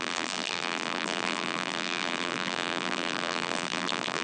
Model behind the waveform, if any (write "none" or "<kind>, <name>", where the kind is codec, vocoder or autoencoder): vocoder, BigVGAN v2